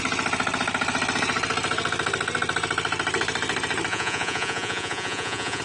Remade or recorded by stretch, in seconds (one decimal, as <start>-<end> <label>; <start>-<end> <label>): 0.0-3.9 recorded; 3.9-5.6 remade